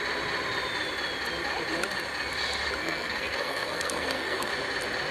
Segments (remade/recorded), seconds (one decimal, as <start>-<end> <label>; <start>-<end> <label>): 0.0-2.8 recorded; 2.8-4.5 remade; 4.5-5.1 recorded

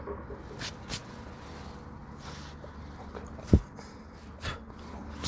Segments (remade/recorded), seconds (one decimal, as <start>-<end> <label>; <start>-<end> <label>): 0.0-5.3 recorded

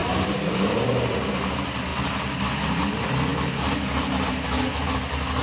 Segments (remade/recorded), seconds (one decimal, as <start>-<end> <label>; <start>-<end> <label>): 0.0-5.4 recorded